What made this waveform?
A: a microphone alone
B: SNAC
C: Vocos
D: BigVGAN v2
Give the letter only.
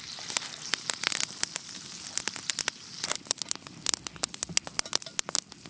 A